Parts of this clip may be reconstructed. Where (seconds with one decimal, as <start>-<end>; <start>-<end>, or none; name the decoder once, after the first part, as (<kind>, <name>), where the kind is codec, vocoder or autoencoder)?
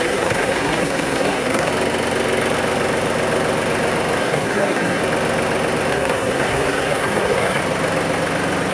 0.0-1.7 (codec, SNAC); 4.2-5.0; 5.9-7.6